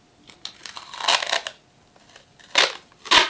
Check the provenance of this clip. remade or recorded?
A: recorded